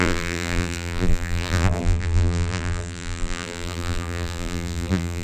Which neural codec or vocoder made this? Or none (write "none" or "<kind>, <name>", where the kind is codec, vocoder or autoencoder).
vocoder, BigVGAN v2